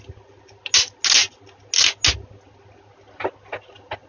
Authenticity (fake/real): real